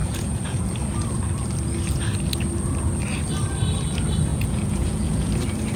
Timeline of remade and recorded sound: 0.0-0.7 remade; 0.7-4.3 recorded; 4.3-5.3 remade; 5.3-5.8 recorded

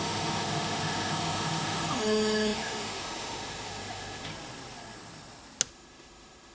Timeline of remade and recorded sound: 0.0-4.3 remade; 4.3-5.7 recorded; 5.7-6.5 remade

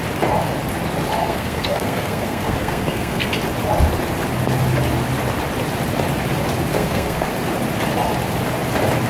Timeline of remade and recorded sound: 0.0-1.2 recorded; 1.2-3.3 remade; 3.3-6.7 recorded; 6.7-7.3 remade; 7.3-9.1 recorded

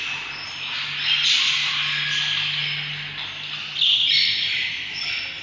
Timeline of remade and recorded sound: 0.0-5.4 recorded

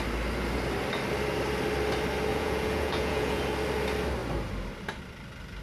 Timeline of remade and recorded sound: 0.0-2.3 recorded; 2.3-3.4 remade; 3.4-5.6 recorded